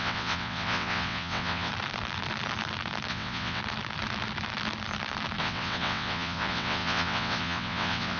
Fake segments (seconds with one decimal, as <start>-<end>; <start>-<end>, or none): 0.0-1.7; 3.1-3.6; 5.4-8.2